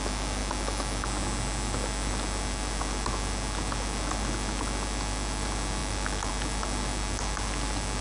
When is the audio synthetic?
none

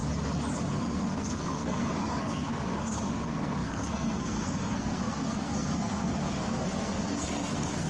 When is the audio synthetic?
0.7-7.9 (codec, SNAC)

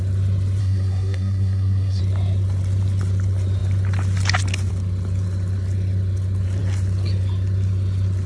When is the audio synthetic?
0.6-2.0 (codec, SNAC)

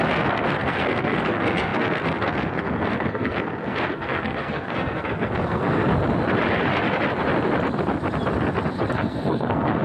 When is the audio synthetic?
0.0-5.8 (codec, SNAC); 8.9-9.8

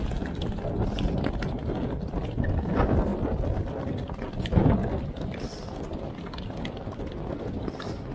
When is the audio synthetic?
none

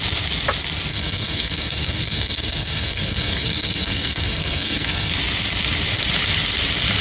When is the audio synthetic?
0.9-5.1 (codec, SNAC)